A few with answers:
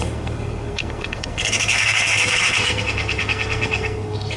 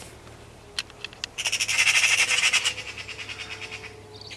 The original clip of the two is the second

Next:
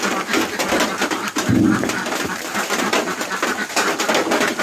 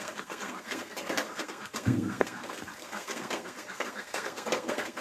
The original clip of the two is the first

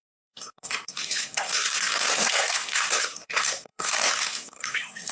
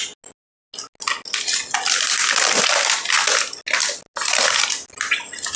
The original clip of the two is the second